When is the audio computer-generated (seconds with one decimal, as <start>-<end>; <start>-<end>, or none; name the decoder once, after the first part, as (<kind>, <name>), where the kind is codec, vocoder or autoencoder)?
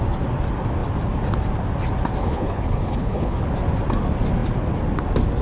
2.2-3.4 (codec, HILCodec)